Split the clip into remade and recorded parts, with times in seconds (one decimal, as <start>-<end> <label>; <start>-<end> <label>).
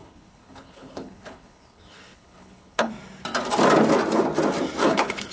0.0-2.9 remade; 2.9-4.8 recorded; 4.8-5.3 remade